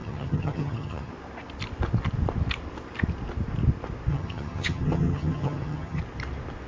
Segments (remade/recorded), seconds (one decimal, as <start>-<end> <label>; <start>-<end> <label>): 0.0-1.1 remade; 1.1-4.1 recorded; 4.1-6.0 remade; 6.0-6.7 recorded